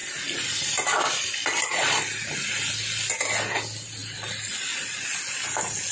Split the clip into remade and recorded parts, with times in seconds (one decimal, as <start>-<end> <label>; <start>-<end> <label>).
0.0-5.9 recorded